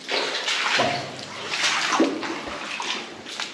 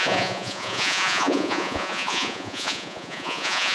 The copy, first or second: second